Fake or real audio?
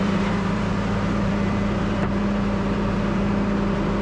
fake